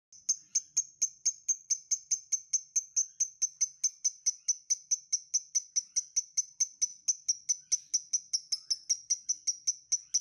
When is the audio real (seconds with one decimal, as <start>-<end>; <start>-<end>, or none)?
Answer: 0.0-10.2